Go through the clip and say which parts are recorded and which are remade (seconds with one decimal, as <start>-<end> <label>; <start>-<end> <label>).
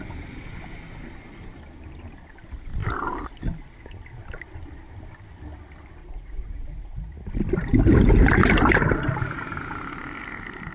0.0-6.0 recorded; 6.0-7.3 remade; 7.3-10.7 recorded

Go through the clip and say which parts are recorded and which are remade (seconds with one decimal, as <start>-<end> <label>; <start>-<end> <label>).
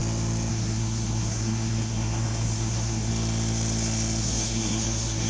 0.0-0.5 recorded; 0.5-3.1 remade; 3.1-4.2 recorded; 4.2-5.3 remade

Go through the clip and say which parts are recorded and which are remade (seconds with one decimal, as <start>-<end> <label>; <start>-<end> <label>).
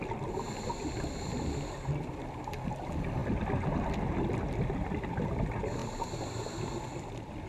0.0-7.5 recorded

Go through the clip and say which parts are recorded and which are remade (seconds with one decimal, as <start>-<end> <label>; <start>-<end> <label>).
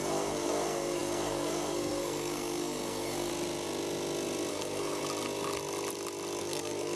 0.0-3.3 remade; 3.3-4.5 recorded; 4.5-5.0 remade; 5.0-6.4 recorded; 6.4-7.0 remade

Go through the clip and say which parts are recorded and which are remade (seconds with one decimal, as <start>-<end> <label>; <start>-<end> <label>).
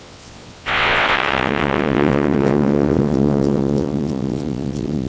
0.0-5.1 remade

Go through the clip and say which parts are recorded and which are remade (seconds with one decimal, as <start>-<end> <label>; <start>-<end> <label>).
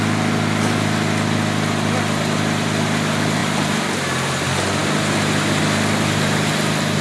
0.0-3.4 recorded; 3.4-4.3 remade; 4.3-7.0 recorded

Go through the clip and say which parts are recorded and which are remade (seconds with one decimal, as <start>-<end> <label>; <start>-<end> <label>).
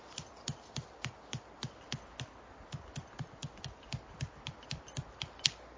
0.0-5.8 recorded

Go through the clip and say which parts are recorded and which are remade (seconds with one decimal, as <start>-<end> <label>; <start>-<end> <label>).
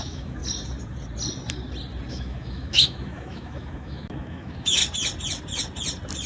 0.0-0.4 remade; 0.4-2.1 recorded; 2.1-4.8 remade; 4.8-6.3 recorded